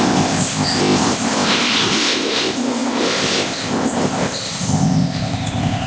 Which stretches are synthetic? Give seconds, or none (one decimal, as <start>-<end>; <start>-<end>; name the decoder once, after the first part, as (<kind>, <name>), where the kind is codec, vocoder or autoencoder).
0.0-5.9 (codec, ZipCodec)